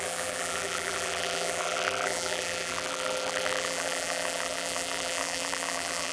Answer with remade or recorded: remade